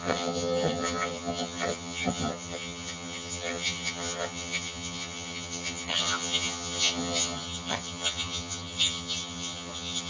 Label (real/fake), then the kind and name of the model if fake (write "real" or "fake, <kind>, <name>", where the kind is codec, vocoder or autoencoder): fake, vocoder, HiFi-GAN